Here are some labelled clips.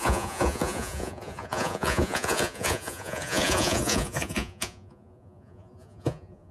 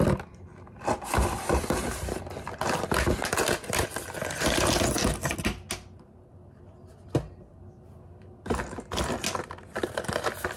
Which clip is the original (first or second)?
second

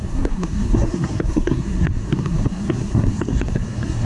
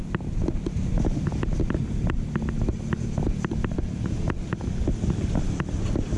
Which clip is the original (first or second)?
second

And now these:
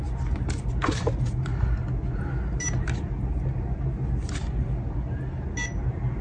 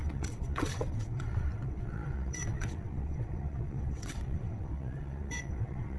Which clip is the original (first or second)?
first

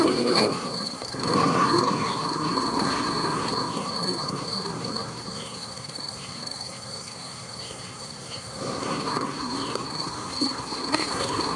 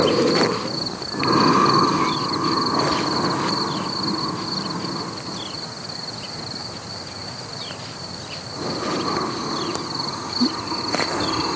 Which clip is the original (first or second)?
second